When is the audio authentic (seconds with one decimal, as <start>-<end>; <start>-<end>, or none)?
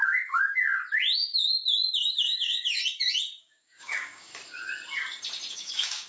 0.7-2.1; 2.8-3.4; 4.3-5.5